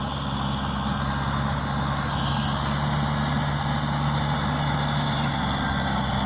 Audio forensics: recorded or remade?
recorded